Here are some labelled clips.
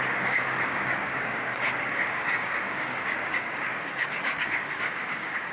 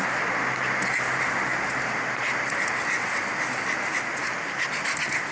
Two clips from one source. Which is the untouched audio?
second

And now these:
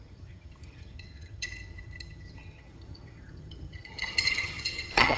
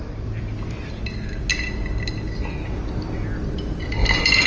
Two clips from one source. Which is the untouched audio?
second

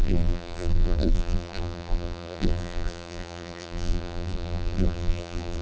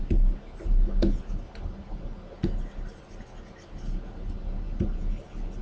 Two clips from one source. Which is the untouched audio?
second